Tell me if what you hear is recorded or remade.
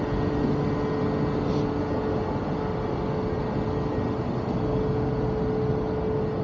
recorded